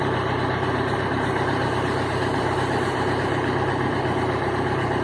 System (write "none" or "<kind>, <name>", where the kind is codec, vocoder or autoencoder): vocoder, BigVGAN v2